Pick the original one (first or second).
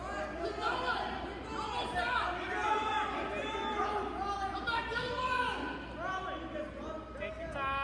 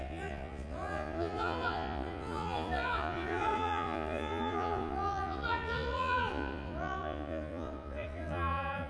first